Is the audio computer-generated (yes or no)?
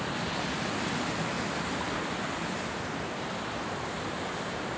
no